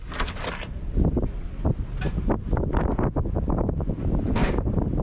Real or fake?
real